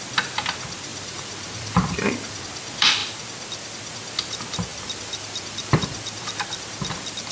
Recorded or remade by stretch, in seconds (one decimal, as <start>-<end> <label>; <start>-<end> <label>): 0.0-0.9 recorded; 0.9-2.4 remade; 2.4-4.7 recorded; 4.7-6.6 remade; 6.6-7.3 recorded